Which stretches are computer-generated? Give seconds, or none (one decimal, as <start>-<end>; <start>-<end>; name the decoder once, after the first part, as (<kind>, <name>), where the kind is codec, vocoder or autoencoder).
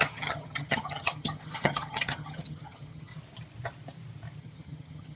0.0-3.1 (vocoder, HiFi-GAN); 4.4-5.2